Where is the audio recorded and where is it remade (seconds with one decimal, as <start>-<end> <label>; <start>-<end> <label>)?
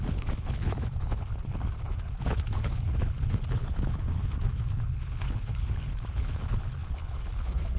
0.0-7.8 remade